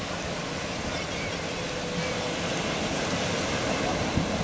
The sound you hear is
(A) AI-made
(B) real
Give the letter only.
B